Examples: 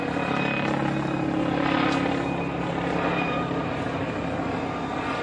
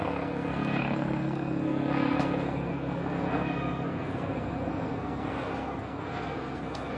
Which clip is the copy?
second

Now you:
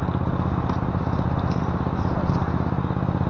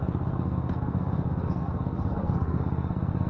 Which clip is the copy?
second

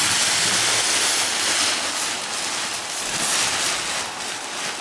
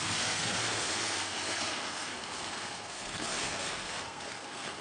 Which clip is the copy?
second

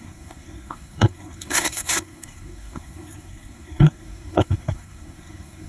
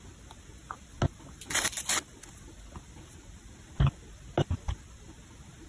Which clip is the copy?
first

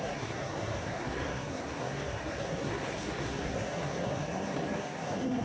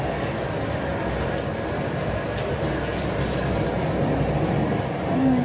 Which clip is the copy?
first